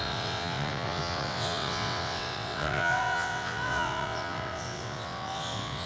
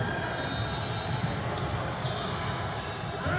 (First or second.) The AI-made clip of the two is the first